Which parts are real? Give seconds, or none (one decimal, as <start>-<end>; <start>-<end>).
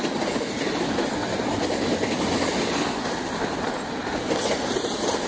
0.0-5.3